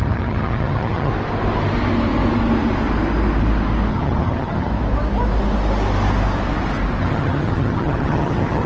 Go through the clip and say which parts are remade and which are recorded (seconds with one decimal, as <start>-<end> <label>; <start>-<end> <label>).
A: 0.0-1.1 remade; 1.1-3.9 recorded; 3.9-4.7 remade; 4.7-7.0 recorded; 7.0-8.7 remade